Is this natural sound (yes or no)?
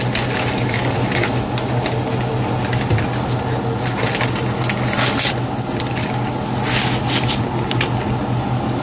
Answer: yes